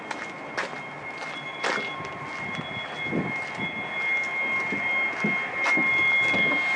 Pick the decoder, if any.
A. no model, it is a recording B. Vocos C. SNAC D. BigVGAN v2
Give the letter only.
A